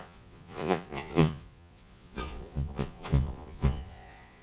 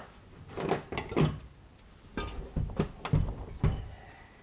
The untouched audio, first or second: second